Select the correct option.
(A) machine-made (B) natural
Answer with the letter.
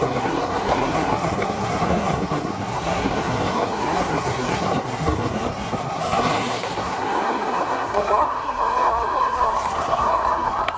A